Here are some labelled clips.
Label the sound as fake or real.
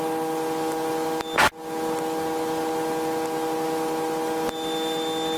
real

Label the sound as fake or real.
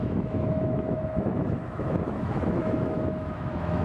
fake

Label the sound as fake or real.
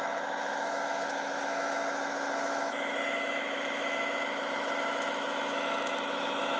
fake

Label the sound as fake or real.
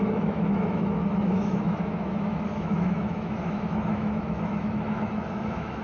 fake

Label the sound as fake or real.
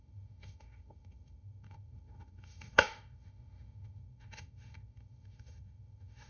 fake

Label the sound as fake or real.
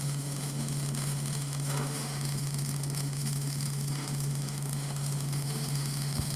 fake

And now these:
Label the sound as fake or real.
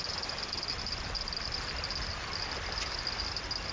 real